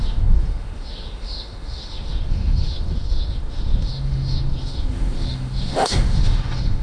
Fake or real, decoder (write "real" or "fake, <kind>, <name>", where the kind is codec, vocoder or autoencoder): fake, autoencoder, DAC-VAE